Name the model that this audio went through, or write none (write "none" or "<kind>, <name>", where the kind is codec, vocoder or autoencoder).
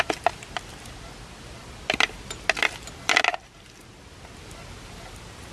none